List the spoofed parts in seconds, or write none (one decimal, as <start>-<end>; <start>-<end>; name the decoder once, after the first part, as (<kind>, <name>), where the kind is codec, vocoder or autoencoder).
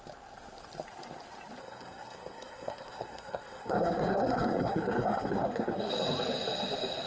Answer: 1.6-5.9 (codec, SNAC)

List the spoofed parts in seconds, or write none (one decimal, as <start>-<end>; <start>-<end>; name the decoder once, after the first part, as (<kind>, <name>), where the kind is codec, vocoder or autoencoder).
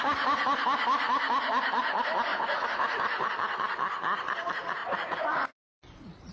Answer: 2.3-3.3 (vocoder, Vocos); 4.8-6.3